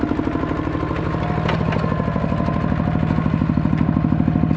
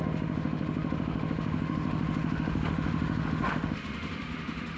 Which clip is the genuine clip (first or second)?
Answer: first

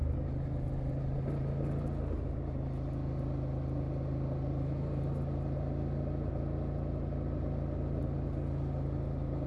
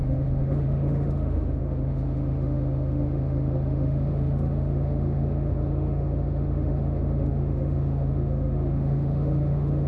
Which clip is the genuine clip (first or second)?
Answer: first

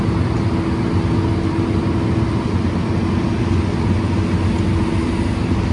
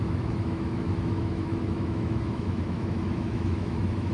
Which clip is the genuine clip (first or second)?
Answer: first